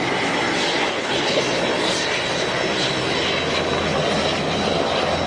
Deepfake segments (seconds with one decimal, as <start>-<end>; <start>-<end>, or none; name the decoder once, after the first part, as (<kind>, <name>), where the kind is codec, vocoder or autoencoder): 0.9-1.4 (codec, HILCodec)